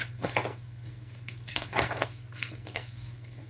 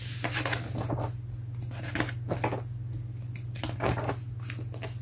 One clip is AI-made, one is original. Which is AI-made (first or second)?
first